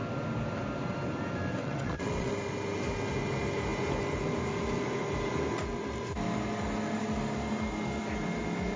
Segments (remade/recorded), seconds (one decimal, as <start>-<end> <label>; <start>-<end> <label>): 0.0-1.6 recorded; 1.6-2.3 remade; 2.3-8.8 recorded